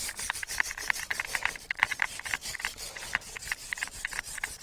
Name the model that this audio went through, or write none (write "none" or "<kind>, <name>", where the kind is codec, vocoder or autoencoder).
none